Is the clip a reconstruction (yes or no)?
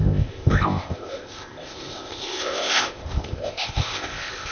yes